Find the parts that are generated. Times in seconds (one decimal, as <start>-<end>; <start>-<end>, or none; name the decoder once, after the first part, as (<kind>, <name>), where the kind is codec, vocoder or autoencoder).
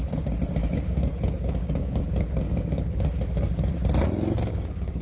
0.6-3.6 (codec, DAC); 4.5-5.0